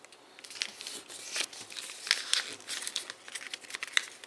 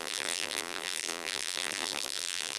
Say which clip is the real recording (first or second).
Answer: first